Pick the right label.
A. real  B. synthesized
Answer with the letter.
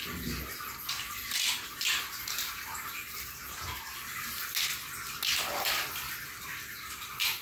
A